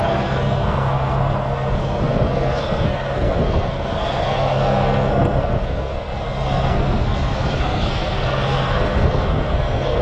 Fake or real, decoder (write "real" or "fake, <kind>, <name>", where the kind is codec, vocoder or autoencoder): fake, codec, SNAC